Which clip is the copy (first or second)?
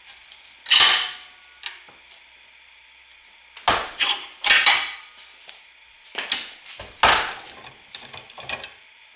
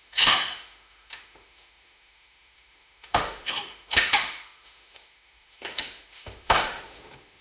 second